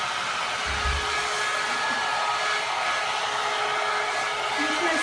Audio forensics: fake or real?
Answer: real